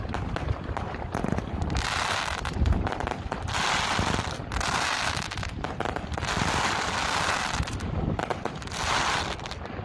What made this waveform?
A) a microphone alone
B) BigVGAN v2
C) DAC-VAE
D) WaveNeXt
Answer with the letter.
A